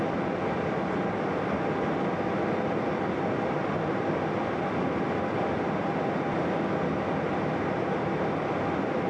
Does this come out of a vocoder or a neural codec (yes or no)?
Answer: no